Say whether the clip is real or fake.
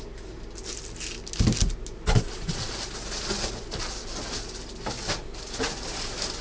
real